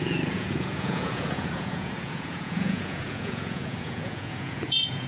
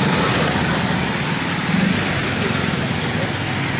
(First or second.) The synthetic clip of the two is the first